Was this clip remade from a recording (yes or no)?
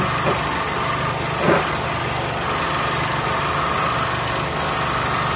no